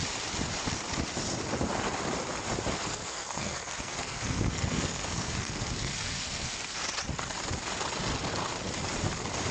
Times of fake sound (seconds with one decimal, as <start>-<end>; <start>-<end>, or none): 2.8-6.8